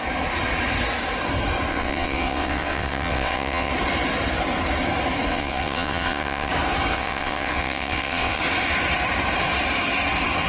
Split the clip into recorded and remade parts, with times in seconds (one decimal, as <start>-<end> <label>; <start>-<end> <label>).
0.0-1.7 recorded; 1.7-3.7 remade; 3.7-5.3 recorded; 5.3-6.5 remade; 6.5-6.9 recorded; 6.9-8.4 remade; 8.4-10.5 recorded